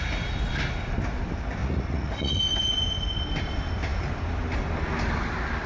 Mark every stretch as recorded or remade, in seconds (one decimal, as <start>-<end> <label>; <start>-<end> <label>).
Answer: 0.0-1.6 recorded; 1.6-2.4 remade; 2.4-5.7 recorded